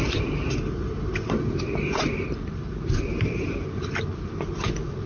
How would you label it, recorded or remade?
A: recorded